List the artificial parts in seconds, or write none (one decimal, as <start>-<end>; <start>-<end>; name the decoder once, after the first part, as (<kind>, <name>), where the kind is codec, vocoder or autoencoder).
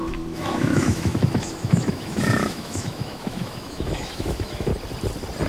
0.0-4.7 (autoencoder, DAC-VAE)